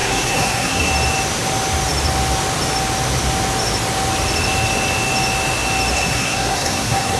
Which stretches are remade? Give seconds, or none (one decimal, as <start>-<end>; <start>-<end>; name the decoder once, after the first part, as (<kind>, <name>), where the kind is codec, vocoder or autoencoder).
0.0-0.9 (codec, SNAC); 5.9-7.2